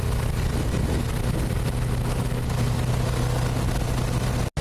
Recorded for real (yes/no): yes